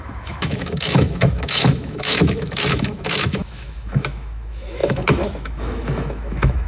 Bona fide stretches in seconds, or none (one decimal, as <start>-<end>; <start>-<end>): none

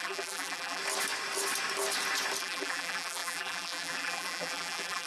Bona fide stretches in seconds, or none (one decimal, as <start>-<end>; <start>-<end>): 0.8-2.4

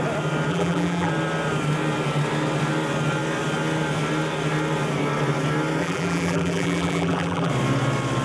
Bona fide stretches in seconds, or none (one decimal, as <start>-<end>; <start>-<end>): 0.0-0.5; 1.1-5.8; 7.5-8.2

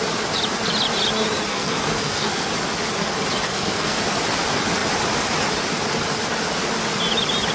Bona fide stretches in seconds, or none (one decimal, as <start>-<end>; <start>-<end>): 0.0-1.5; 2.5-3.5; 4.0-7.5

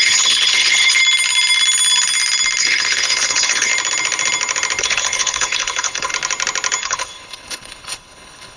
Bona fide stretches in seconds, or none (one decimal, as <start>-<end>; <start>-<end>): 1.0-2.6; 3.7-4.8; 6.1-6.8

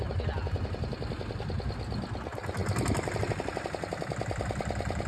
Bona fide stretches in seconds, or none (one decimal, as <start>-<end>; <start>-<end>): 0.0-5.1